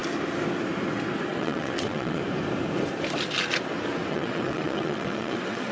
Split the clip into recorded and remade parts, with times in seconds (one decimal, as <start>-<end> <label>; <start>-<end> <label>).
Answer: 0.0-1.3 recorded; 1.3-2.2 remade; 2.2-4.1 recorded; 4.1-5.7 remade